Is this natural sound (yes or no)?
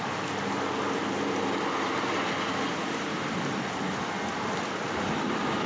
yes